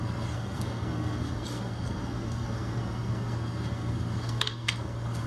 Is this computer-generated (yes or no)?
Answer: yes